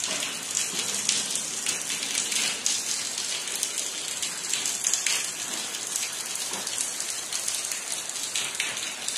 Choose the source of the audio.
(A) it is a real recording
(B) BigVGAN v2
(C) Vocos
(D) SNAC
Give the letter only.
A